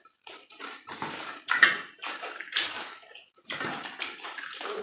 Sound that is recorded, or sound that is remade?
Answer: remade